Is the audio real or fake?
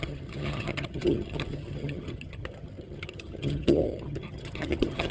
fake